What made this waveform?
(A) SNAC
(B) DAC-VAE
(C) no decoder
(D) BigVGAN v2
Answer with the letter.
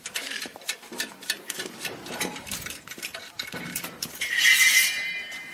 D